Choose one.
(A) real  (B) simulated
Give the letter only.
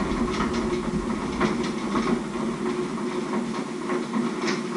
A